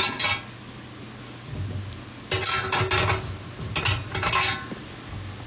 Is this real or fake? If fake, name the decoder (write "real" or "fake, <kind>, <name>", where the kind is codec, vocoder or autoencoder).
real